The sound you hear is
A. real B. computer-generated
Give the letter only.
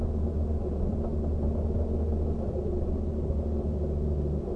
A